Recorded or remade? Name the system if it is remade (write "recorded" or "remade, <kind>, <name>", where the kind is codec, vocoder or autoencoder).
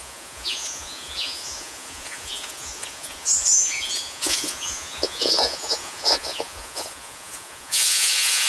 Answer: remade, vocoder, Vocos